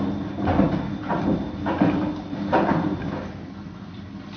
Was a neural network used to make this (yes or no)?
no